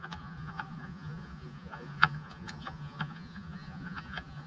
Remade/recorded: remade